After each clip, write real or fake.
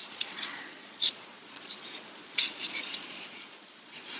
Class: fake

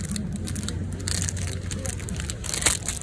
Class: real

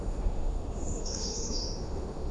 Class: fake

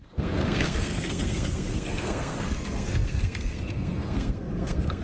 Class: fake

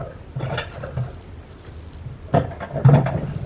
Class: real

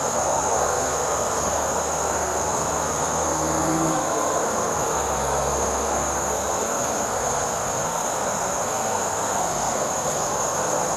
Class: fake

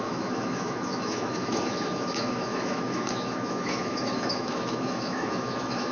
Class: fake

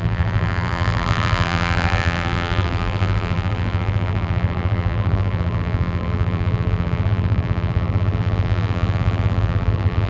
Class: fake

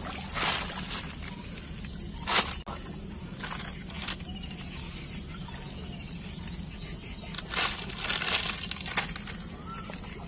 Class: real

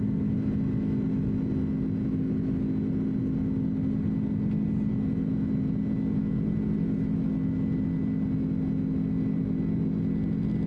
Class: real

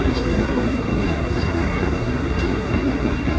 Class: fake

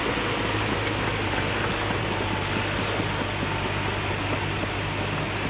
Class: real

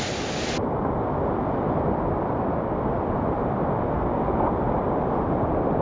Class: real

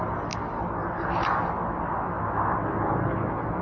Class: real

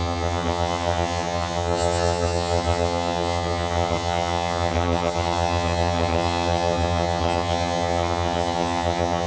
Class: fake